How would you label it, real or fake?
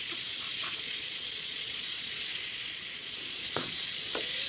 fake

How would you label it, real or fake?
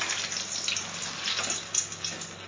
real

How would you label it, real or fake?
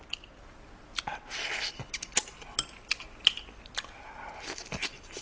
real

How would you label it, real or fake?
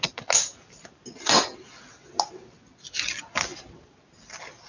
real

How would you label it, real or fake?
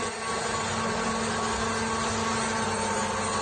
real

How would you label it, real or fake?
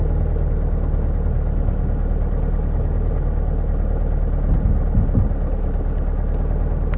real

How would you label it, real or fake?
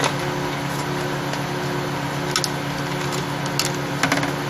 real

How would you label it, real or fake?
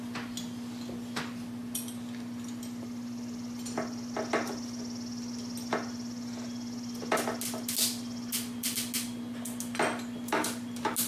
real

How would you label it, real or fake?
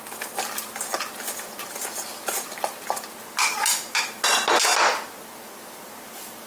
real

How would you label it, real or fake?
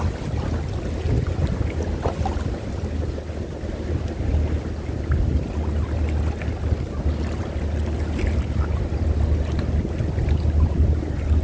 real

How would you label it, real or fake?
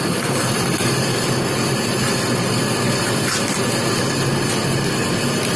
real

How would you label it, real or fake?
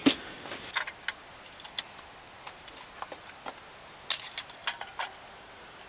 real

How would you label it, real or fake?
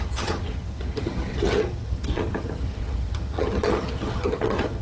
fake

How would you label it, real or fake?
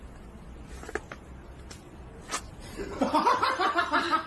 real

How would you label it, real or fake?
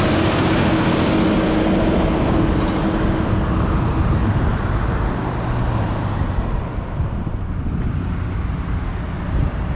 real